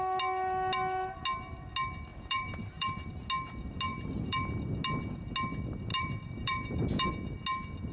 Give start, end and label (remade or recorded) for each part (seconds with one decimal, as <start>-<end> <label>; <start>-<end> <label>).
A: 0.0-2.1 recorded; 2.1-3.1 remade; 3.1-3.9 recorded; 3.9-4.5 remade; 4.5-5.9 recorded; 5.9-7.1 remade; 7.1-7.9 recorded